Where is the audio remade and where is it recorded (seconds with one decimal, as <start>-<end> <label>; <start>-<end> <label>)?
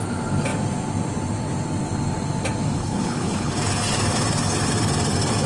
0.0-2.8 recorded; 2.8-3.5 remade; 3.5-5.5 recorded